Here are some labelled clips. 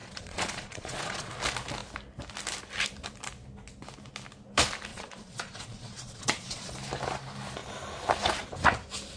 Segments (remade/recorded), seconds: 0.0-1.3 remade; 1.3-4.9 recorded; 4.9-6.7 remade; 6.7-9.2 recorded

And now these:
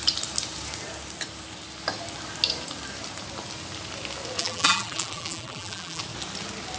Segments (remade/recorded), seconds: 0.0-4.4 recorded; 4.4-6.0 remade; 6.0-6.8 recorded